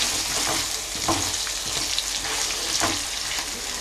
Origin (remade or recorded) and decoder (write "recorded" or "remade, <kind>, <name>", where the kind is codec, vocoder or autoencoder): recorded